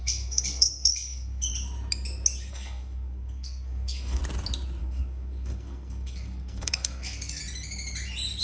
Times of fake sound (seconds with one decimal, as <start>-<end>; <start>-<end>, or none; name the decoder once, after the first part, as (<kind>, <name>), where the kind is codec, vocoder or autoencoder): 0.0-1.5 (codec, SNAC); 2.5-4.2; 4.8-7.4